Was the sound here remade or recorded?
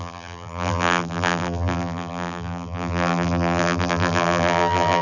remade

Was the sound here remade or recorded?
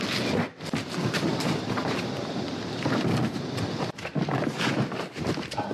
remade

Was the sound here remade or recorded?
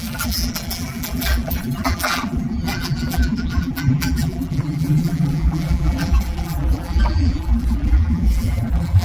remade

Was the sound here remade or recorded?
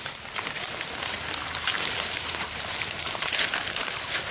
remade